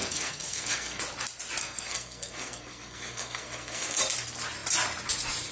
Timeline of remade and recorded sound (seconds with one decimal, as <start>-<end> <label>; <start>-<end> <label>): 0.0-1.0 remade; 1.0-1.6 recorded; 1.6-4.0 remade; 4.0-5.5 recorded

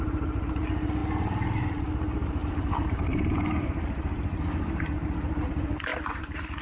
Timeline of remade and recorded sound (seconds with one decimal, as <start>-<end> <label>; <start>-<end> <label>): 0.0-2.4 recorded; 2.4-5.5 remade; 5.5-5.9 recorded; 5.9-6.6 remade

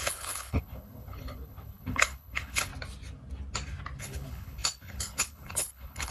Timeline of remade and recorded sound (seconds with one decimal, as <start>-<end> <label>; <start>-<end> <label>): 0.0-2.7 remade; 2.7-4.0 recorded; 4.0-6.1 remade

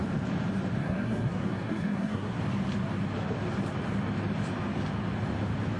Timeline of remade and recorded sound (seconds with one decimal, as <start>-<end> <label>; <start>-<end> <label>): 0.0-0.8 recorded; 0.8-2.4 remade; 2.4-5.8 recorded

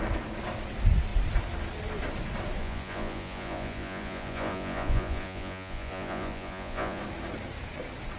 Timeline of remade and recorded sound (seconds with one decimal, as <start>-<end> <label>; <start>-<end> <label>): 0.0-2.6 recorded; 2.6-7.0 remade; 7.0-8.2 recorded

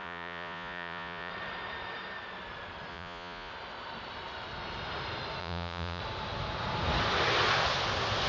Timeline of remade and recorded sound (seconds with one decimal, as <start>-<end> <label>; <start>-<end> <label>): 0.0-1.3 remade; 1.3-2.9 recorded; 2.9-3.5 remade; 3.5-5.4 recorded; 5.4-6.0 remade; 6.0-8.3 recorded

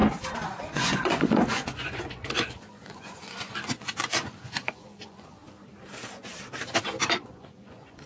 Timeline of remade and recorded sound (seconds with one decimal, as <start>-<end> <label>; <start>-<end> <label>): 0.0-0.6 recorded; 0.6-5.4 remade; 5.4-7.3 recorded; 7.3-8.1 remade